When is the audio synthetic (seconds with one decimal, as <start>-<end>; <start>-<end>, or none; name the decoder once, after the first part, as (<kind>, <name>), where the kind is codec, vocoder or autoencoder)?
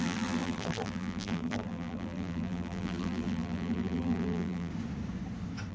0.0-4.7 (vocoder, BigVGAN v2)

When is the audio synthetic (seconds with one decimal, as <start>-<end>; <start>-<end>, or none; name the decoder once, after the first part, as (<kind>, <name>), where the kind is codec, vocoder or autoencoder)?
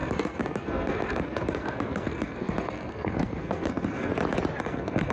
0.0-4.1 (codec, SNAC); 4.6-5.1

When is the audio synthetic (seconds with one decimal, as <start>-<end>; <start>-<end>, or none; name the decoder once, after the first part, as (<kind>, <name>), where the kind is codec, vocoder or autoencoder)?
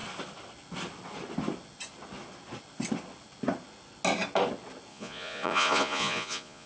4.9-6.7 (vocoder, Vocos)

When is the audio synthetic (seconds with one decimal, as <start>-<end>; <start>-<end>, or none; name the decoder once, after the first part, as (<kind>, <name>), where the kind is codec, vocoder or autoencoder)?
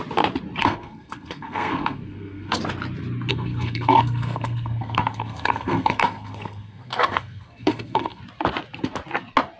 0.6-2.6 (codec, SNAC); 3.3-8.2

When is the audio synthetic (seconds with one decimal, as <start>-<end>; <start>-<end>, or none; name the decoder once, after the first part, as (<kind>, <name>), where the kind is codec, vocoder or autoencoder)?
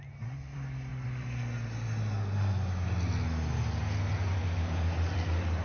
none